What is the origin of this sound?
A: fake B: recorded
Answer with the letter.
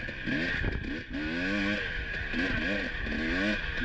B